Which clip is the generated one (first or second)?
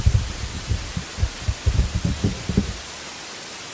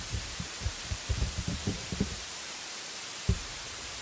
second